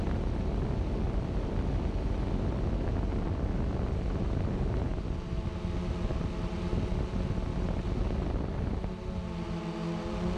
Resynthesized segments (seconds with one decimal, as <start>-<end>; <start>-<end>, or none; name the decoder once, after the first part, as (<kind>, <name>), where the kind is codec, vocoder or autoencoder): none